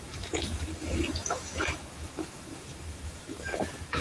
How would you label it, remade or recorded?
remade